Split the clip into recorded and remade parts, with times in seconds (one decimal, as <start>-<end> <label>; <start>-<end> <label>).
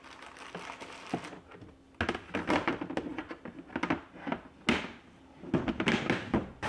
0.0-6.7 recorded